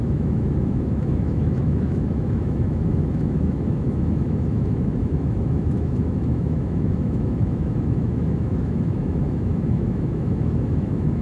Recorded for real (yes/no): no